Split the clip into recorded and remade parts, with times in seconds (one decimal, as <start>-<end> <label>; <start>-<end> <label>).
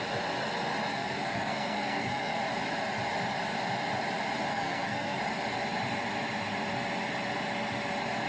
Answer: 0.0-0.9 recorded; 0.9-2.4 remade; 2.4-4.5 recorded; 4.5-5.2 remade; 5.2-8.3 recorded